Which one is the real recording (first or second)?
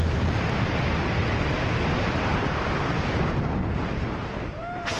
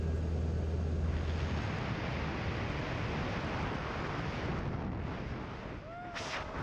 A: second